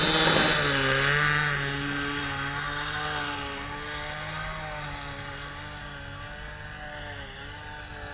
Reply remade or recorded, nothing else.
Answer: recorded